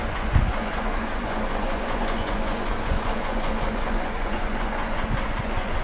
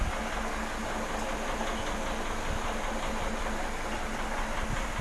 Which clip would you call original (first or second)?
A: second